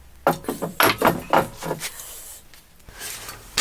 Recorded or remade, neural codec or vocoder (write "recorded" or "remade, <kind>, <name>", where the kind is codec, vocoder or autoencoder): recorded